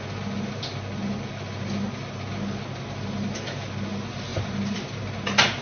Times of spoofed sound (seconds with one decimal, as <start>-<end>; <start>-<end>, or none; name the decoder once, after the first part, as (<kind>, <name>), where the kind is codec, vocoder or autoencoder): 4.3-5.0 (vocoder, BigVGAN v2)